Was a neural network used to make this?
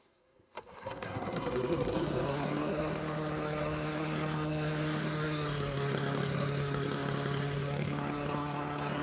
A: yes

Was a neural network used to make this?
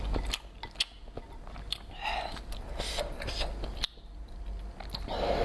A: no